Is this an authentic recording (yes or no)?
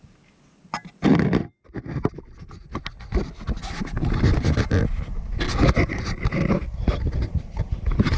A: yes